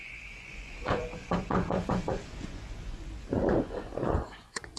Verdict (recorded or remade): remade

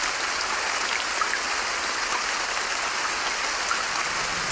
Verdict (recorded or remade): recorded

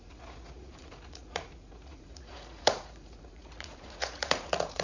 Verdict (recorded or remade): remade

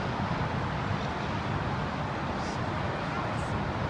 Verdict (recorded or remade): recorded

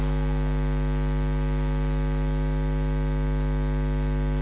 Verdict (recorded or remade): recorded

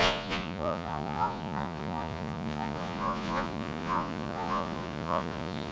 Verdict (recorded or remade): remade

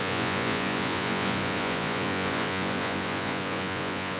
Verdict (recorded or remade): remade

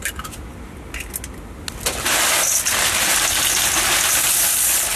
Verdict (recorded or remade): recorded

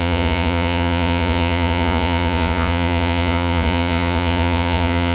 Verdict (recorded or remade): remade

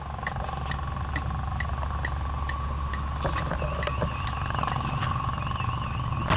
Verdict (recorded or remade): recorded